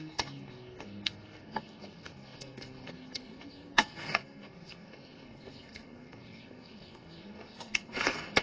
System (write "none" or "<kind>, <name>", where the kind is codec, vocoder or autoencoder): codec, SNAC